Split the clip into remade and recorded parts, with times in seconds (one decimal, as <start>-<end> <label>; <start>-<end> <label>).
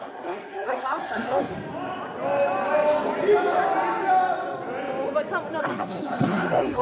0.0-1.5 remade; 1.5-5.6 recorded; 5.6-6.8 remade